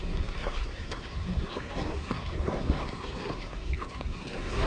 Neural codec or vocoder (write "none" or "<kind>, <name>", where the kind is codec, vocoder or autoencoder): codec, SNAC